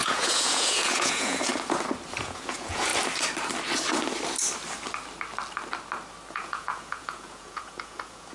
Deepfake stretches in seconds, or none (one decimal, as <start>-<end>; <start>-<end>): 0.0-1.5; 2.2-2.9; 6.3-8.3